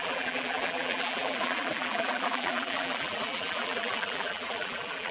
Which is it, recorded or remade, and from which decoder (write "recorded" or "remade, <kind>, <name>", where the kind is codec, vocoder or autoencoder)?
remade, vocoder, BigVGAN v2